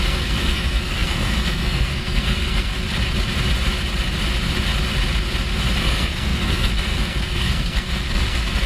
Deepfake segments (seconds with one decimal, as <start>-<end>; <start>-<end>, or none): 0.0-2.7; 5.8-8.7